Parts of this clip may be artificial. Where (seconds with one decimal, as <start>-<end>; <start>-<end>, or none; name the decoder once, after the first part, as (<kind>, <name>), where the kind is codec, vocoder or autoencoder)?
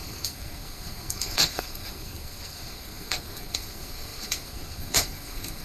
0.0-5.6 (codec, SNAC)